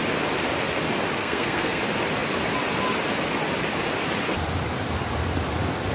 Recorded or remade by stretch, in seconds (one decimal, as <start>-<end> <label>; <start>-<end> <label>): 0.0-1.2 recorded; 1.2-1.8 remade; 1.8-5.9 recorded